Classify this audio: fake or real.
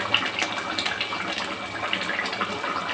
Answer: real